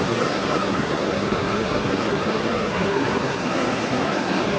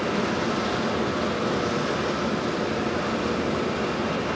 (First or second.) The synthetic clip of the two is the first